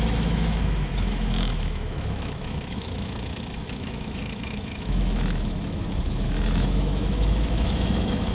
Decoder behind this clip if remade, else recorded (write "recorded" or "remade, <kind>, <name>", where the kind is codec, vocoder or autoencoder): remade, autoencoder, DAC-VAE